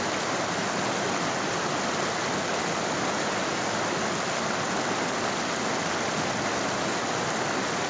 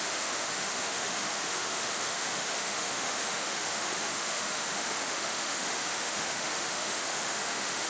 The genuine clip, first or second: first